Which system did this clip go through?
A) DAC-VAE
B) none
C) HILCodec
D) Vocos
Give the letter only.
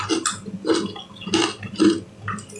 B